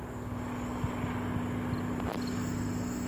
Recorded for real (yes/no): no